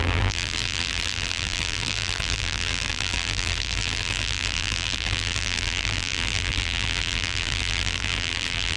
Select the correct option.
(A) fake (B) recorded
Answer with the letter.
A